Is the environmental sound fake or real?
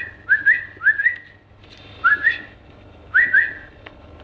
real